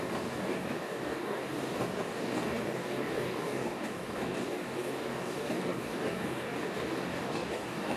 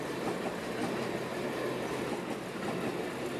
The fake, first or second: first